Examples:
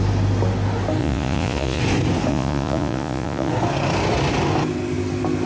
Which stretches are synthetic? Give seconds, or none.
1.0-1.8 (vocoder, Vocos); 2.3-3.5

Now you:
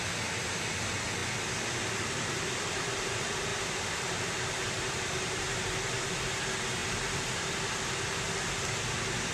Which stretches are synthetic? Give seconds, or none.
3.5-6.1 (vocoder, BigVGAN v2); 6.8-7.5

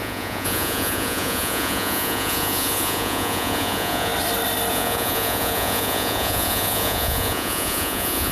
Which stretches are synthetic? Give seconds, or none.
0.0-4.1 (vocoder, Vocos); 4.7-8.3

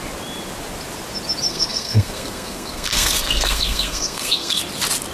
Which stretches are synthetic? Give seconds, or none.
1.5-4.6 (codec, SNAC)

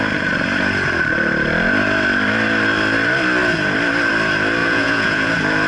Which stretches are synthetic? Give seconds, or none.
4.6-5.3 (vocoder, Vocos)

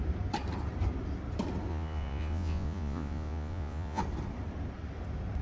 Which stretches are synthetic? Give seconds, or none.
1.7-4.0 (vocoder, Vocos)

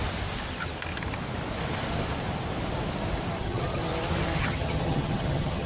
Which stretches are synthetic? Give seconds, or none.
3.4-3.8 (vocoder, HiFi-GAN); 4.4-5.7